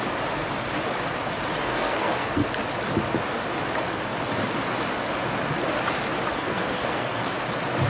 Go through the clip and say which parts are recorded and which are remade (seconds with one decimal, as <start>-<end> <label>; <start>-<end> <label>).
0.0-1.6 recorded; 1.6-2.5 remade; 2.5-6.3 recorded; 6.3-7.3 remade; 7.3-7.9 recorded